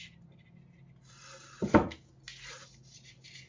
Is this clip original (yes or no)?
yes